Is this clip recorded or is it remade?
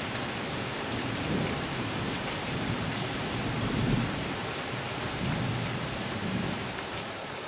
remade